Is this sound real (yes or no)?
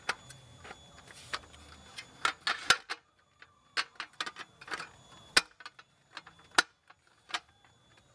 yes